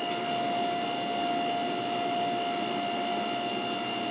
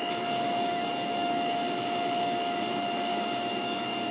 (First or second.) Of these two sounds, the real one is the first